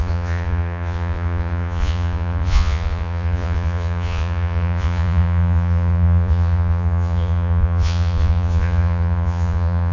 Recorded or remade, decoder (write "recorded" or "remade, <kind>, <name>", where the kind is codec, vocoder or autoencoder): remade, vocoder, Vocos